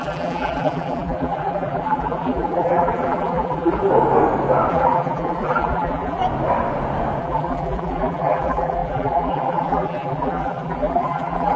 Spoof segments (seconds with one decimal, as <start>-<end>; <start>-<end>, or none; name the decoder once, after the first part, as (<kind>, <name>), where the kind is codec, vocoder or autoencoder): 0.0-3.9 (vocoder, BigVGAN v2); 4.7-6.2; 7.2-11.6